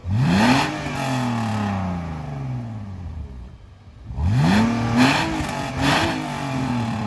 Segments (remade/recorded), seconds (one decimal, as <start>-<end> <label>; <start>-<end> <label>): 0.0-0.9 remade; 0.9-6.0 recorded; 6.0-7.1 remade